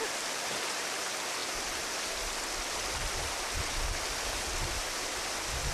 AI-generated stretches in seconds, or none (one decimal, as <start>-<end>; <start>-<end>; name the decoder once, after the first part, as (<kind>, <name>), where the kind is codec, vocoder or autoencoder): none

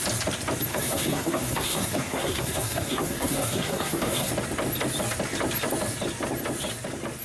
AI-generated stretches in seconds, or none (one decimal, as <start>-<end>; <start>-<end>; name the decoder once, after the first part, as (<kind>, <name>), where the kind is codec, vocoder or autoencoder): 0.7-4.3 (codec, SNAC)

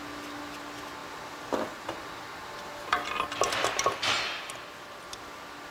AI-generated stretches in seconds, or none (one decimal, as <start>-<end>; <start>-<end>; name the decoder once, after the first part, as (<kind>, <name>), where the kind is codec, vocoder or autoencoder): none